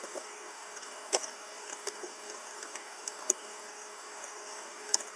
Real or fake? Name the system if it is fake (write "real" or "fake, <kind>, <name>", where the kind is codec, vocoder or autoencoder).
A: fake, codec, DAC